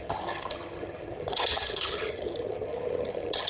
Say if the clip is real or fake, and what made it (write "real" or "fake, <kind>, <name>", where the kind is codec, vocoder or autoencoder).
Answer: fake, vocoder, HiFi-GAN